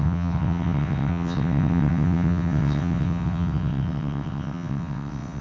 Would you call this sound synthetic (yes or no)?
yes